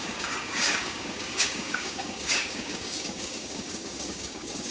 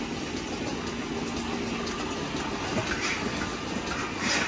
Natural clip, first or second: second